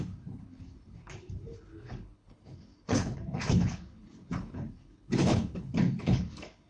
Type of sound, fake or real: fake